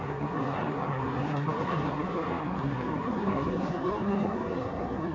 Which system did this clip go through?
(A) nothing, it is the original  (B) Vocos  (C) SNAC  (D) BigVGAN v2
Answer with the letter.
C